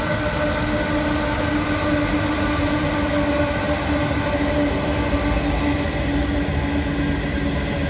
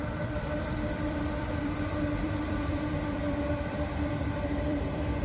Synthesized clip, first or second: second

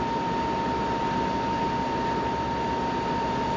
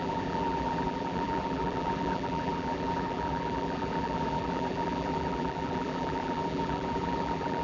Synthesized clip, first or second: second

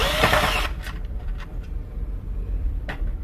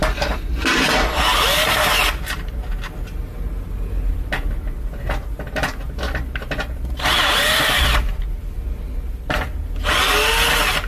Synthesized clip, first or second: first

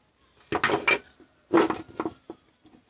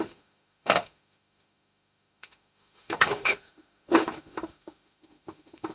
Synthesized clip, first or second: second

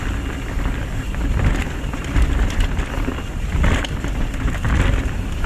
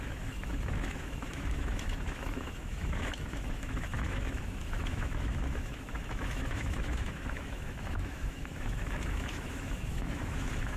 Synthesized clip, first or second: second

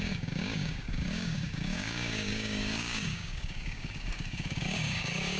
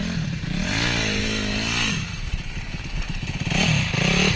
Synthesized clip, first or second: first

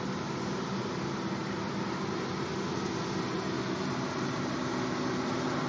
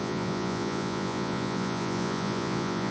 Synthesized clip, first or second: second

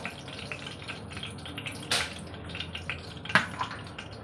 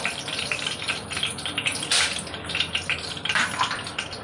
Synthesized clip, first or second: second